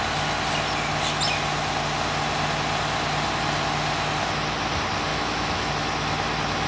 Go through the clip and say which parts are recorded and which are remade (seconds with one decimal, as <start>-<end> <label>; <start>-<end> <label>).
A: 0.0-5.1 recorded; 5.1-5.7 remade; 5.7-6.7 recorded